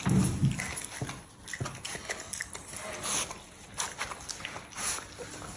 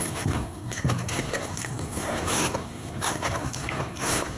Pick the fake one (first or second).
second